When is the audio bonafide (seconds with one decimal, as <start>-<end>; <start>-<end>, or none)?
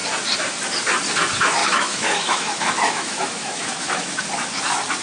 0.0-1.6; 4.2-5.0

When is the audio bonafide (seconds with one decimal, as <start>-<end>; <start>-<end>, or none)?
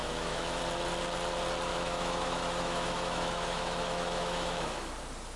0.6-1.7; 4.9-5.4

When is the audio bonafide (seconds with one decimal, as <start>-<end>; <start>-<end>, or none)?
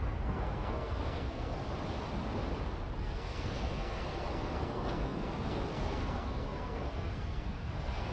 1.6-3.0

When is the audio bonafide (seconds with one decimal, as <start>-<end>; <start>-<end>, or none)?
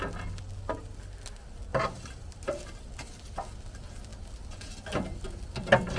0.0-1.7; 2.3-6.0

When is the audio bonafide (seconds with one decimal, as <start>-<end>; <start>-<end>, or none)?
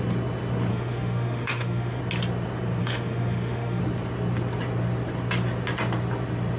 0.0-0.7; 2.0-2.8; 3.8-6.6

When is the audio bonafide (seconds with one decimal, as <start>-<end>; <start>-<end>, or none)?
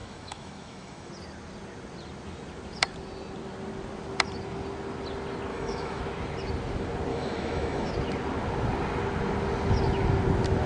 1.1-5.5; 6.0-7.1; 7.9-10.7